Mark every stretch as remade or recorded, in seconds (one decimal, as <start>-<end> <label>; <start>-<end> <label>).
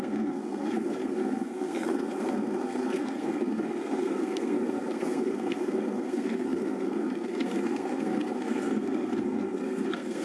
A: 0.0-10.2 remade